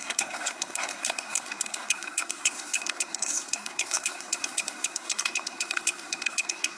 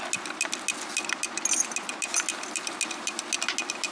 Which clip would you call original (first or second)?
second